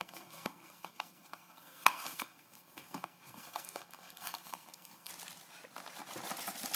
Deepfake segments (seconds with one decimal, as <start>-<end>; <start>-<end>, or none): 0.0-5.1